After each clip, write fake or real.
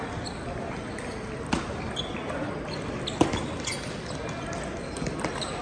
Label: real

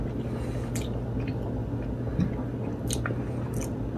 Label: real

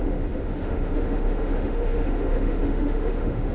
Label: fake